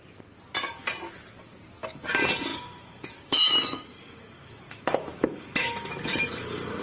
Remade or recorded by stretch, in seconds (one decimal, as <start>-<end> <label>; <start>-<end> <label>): 0.0-2.5 recorded; 2.5-6.8 remade